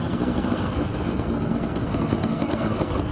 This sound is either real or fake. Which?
fake